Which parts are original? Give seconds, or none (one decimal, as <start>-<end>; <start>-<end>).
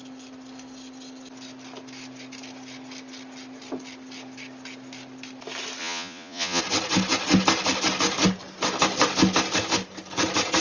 0.0-5.8; 6.6-10.6